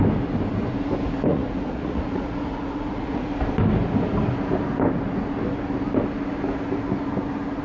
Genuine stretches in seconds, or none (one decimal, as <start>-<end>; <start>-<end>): 0.0-1.3; 3.3-7.6